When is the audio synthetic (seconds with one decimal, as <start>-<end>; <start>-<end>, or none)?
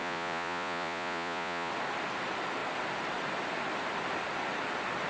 0.0-1.7